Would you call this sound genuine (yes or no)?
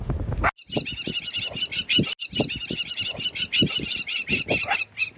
yes